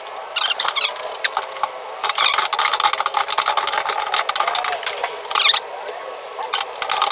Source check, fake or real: real